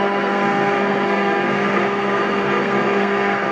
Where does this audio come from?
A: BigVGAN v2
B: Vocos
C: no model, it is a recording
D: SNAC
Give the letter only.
D